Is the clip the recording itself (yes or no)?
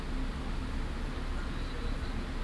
yes